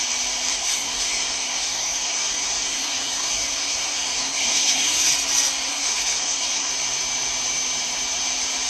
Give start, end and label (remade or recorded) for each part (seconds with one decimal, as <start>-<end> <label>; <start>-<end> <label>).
0.0-0.5 recorded; 0.5-5.1 remade; 5.1-5.7 recorded; 5.7-6.7 remade; 6.7-8.7 recorded